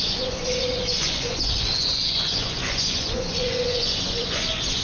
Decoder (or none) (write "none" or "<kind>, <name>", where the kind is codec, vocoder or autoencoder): vocoder, Vocos